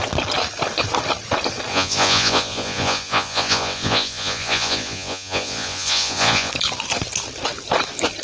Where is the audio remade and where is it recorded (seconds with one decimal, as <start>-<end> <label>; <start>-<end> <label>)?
0.0-1.7 recorded; 1.7-6.5 remade; 6.5-8.2 recorded